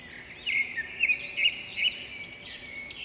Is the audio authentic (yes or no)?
yes